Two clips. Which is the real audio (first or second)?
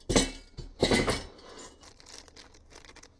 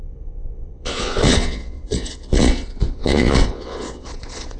first